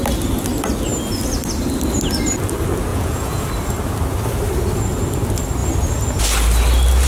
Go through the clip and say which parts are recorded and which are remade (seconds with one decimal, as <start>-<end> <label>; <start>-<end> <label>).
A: 0.0-2.9 recorded; 2.9-3.4 remade; 3.4-7.1 recorded